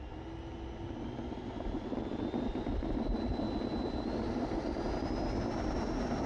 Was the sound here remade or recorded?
recorded